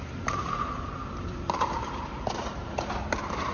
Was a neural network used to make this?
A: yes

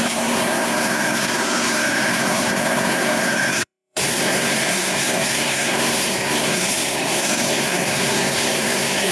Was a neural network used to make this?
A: yes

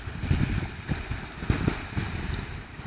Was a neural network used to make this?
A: no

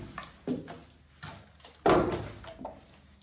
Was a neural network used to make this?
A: no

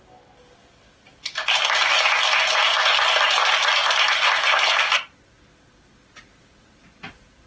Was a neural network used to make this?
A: no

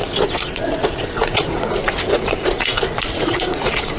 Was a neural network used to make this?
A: yes